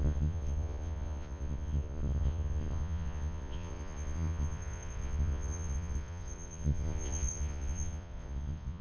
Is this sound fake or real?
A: fake